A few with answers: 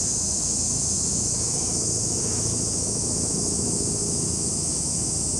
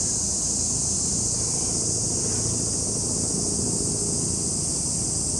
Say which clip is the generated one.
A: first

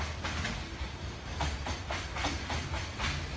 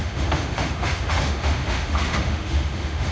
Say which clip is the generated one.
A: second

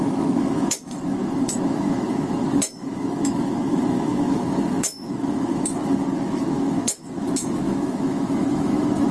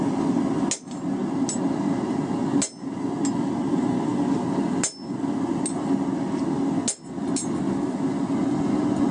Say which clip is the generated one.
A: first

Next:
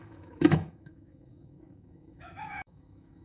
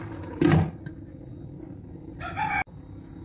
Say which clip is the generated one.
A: first